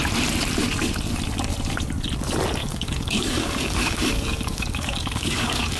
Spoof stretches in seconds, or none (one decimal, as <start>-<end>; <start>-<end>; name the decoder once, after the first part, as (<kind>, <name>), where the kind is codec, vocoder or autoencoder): 2.6-5.8 (codec, DAC)